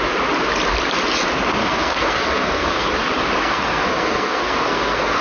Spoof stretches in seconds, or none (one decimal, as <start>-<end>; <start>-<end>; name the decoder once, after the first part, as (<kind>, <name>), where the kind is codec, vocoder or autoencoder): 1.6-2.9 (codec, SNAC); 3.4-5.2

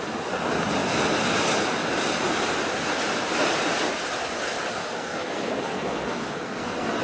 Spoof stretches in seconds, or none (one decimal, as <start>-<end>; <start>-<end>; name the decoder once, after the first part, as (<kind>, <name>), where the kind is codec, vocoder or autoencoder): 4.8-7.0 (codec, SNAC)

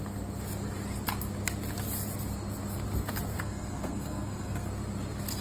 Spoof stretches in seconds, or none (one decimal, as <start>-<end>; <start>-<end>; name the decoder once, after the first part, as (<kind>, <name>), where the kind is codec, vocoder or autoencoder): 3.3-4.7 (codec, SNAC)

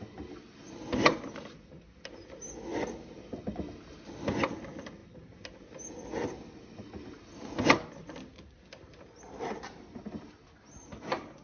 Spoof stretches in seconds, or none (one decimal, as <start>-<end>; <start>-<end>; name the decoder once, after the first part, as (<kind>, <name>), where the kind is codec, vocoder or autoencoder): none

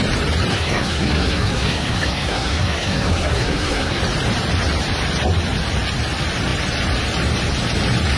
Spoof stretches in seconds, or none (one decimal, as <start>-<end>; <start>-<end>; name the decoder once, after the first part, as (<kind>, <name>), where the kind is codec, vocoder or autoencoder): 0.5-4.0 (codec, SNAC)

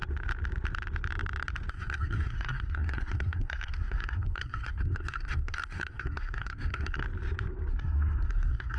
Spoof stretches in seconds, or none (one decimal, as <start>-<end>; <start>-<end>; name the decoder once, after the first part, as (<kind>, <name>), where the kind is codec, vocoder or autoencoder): 1.7-7.0 (codec, SNAC); 7.7-8.8

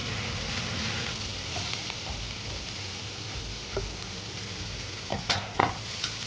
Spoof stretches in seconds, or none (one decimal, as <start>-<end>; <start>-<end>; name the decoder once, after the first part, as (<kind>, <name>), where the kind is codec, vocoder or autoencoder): 5.1-5.7 (codec, SNAC)

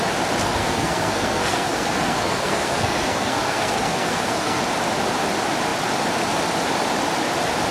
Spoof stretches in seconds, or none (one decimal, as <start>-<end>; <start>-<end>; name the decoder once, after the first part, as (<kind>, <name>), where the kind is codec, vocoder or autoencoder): 0.4-4.6 (codec, SNAC)